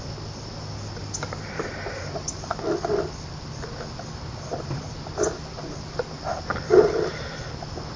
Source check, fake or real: real